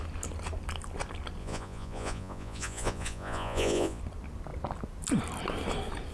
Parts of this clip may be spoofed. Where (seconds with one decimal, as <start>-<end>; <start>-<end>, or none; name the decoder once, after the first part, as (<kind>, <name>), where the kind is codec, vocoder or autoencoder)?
1.4-4.0 (vocoder, Vocos)